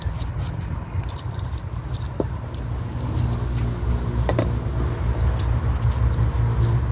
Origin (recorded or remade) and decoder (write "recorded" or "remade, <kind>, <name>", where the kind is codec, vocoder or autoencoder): recorded